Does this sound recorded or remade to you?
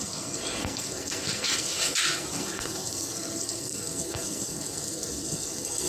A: remade